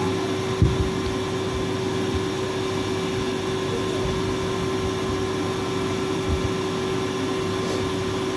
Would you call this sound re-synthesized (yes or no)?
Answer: no